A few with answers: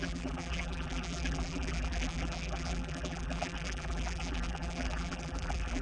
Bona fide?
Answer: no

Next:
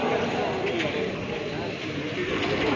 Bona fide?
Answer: yes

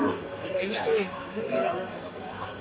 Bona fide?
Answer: no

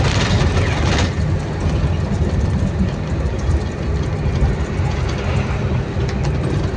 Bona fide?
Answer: yes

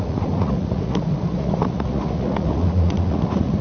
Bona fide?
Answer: no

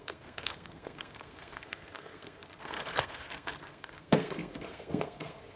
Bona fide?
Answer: no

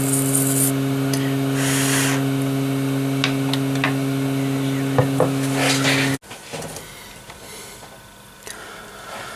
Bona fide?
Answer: yes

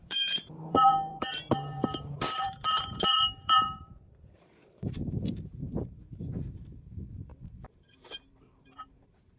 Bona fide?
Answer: no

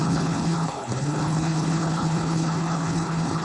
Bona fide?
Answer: no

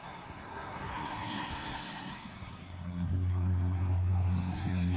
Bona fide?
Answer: no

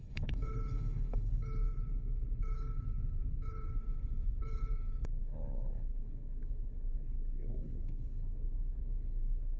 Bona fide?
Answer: no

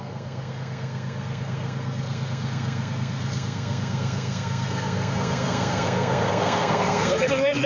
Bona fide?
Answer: no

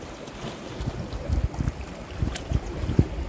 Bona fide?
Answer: yes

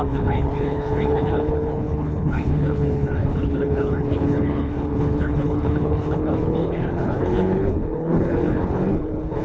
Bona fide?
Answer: no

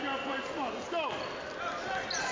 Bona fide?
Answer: yes